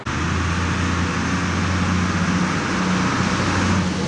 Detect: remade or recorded recorded